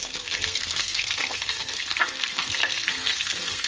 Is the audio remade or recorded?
remade